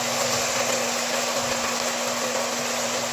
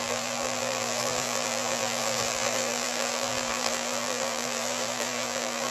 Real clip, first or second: first